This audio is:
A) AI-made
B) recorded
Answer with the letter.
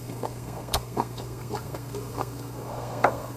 A